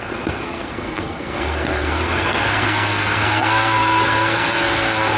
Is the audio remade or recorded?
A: remade